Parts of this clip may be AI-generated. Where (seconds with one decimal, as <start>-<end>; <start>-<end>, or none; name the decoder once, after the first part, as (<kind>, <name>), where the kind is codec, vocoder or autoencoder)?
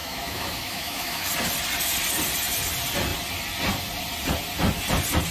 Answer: 0.0-1.3 (autoencoder, DAC-VAE)